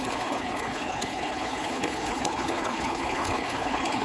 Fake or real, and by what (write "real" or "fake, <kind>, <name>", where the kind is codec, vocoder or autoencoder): fake, codec, HILCodec